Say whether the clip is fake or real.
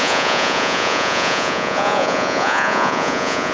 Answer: fake